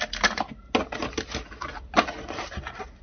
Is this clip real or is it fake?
real